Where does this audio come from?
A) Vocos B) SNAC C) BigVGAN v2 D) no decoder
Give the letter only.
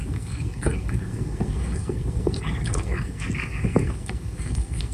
B